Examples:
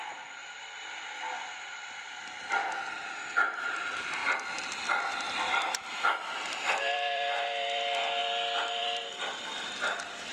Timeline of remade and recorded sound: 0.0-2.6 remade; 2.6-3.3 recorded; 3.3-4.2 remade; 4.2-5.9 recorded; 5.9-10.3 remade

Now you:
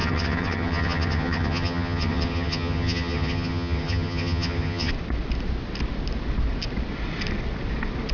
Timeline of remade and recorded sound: 0.0-4.9 remade; 4.9-8.1 recorded

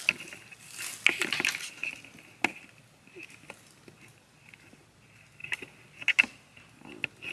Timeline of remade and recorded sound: 0.0-7.3 recorded